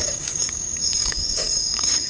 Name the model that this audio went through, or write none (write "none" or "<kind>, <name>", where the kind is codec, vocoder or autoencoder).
codec, DAC